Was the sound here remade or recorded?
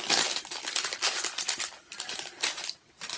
recorded